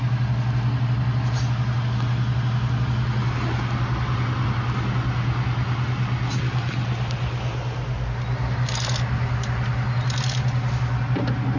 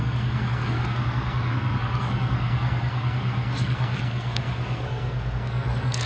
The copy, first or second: second